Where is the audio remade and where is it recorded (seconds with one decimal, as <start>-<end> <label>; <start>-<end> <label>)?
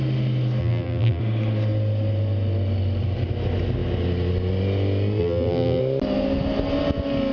0.0-0.6 recorded; 0.6-1.2 remade; 1.2-5.2 recorded; 5.2-5.8 remade; 5.8-7.3 recorded